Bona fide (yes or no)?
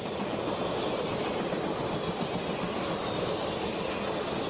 yes